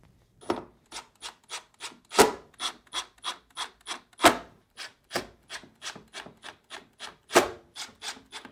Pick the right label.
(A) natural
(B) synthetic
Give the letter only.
A